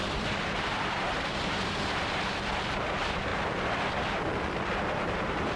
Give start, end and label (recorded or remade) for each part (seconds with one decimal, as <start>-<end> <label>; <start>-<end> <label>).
0.0-3.3 remade; 3.3-4.9 recorded; 4.9-5.6 remade